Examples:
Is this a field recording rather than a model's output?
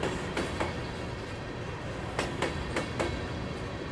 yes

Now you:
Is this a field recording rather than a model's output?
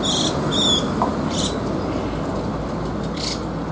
yes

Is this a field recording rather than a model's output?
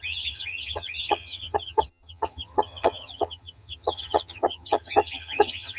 no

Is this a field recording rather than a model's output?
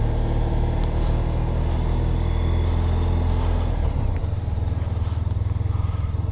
yes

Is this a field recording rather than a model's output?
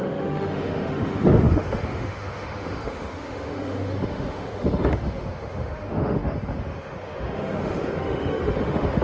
no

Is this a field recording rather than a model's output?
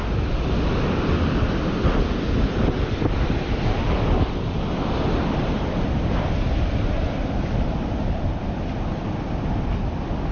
yes